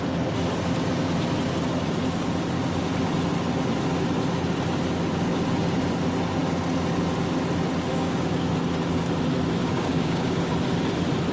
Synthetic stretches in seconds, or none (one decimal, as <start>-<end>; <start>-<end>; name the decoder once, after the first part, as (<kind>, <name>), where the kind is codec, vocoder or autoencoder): 7.9-8.5 (codec, DAC); 9.6-10.5